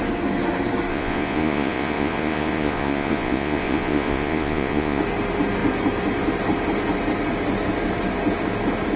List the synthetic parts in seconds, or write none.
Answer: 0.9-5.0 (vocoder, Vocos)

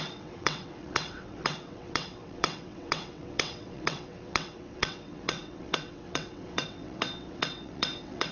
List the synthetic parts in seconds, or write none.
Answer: 0.0-8.3 (vocoder, WaveNeXt)

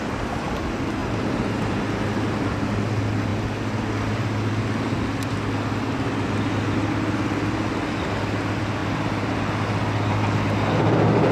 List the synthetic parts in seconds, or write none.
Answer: 1.0-1.8 (vocoder, BigVGAN v2); 8.8-9.3

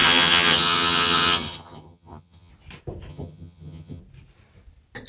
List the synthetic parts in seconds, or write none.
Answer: 0.0-2.5 (vocoder, HiFi-GAN); 3.1-4.0

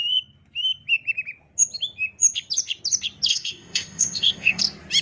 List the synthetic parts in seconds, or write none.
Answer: 3.3-4.6 (codec, ZipCodec)